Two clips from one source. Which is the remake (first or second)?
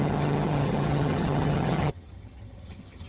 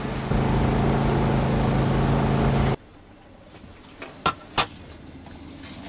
first